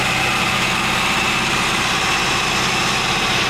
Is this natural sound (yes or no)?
yes